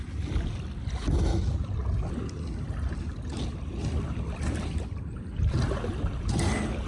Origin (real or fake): real